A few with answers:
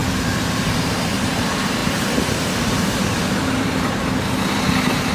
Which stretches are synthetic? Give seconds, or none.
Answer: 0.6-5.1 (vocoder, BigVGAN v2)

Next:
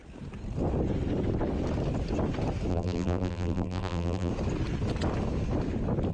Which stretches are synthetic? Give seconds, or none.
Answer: 2.7-4.3 (vocoder, BigVGAN v2)

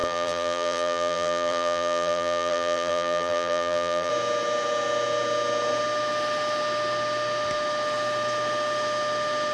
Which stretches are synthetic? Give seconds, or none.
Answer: 0.0-4.1 (vocoder, BigVGAN v2)